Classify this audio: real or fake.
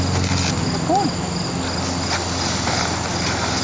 real